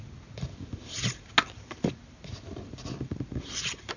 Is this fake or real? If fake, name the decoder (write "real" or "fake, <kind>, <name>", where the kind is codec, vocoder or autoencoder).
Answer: real